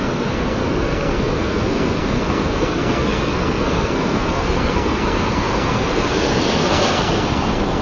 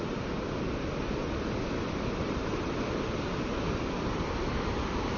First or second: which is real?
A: second